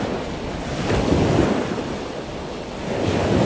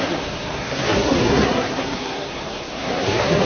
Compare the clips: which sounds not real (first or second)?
second